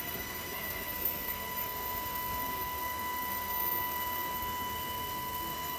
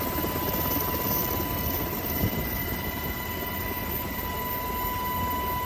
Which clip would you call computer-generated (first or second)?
first